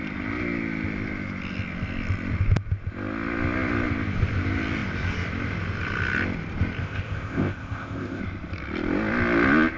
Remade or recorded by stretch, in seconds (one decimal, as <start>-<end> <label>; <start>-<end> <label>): 0.0-6.8 recorded; 6.8-8.2 remade; 8.2-9.8 recorded